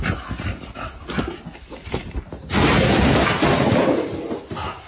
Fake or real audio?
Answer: real